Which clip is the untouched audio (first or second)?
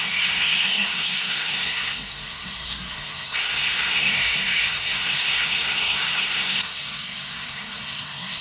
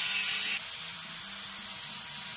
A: second